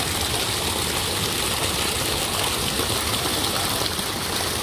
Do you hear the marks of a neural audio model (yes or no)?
no